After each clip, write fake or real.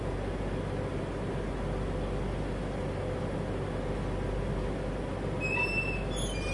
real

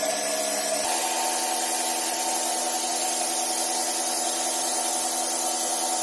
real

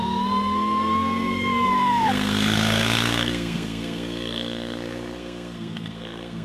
fake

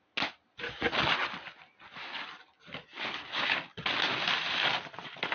real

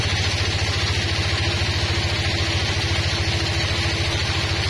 real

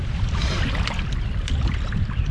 real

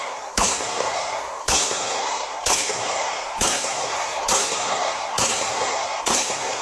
fake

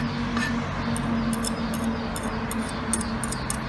real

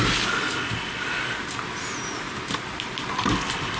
real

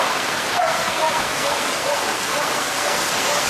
fake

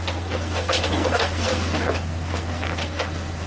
fake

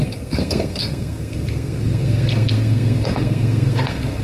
fake